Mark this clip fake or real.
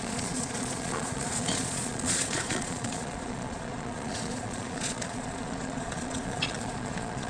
fake